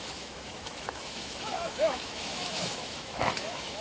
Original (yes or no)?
no